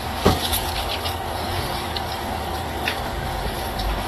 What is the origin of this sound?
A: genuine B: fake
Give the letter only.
B